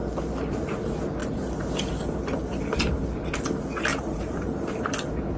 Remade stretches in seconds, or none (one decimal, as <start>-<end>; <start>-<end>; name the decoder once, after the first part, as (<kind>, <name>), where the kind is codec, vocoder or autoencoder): 1.2-1.9 (vocoder, BigVGAN v2); 3.9-4.9